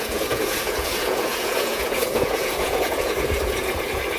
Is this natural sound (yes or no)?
no